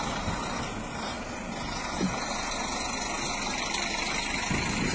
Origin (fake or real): real